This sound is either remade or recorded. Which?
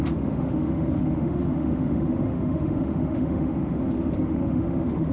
remade